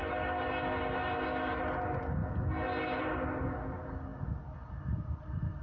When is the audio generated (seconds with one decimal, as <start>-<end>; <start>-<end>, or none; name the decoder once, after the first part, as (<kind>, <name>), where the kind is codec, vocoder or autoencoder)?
none